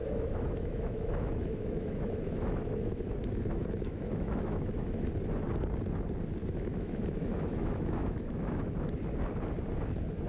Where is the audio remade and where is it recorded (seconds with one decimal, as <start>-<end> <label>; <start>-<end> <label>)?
0.0-5.1 remade; 5.1-6.4 recorded; 6.4-8.9 remade; 8.9-10.3 recorded